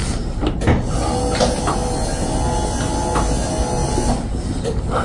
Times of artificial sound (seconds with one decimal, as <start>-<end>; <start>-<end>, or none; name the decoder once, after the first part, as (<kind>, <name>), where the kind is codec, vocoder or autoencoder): none